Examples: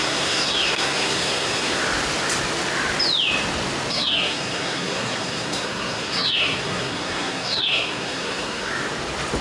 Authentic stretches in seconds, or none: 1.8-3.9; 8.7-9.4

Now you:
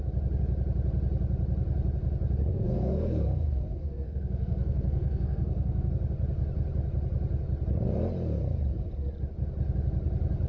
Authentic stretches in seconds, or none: 0.0-2.5; 5.9-10.5

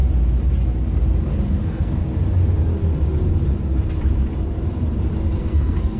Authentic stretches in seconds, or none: 0.0-1.6; 2.0-5.4